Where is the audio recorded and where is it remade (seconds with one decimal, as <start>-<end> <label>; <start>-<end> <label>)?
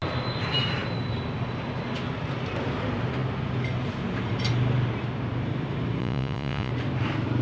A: 0.0-6.0 recorded; 6.0-6.7 remade; 6.7-7.4 recorded